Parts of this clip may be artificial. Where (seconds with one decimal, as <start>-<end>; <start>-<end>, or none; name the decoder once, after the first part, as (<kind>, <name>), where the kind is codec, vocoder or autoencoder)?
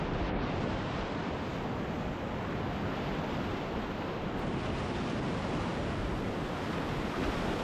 none